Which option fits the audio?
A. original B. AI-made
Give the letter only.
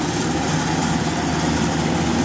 A